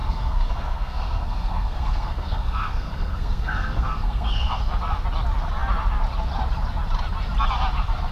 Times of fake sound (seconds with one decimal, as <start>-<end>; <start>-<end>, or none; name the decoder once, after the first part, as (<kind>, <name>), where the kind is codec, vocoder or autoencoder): 0.0-4.6 (codec, SNAC)